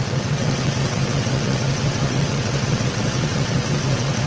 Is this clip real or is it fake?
fake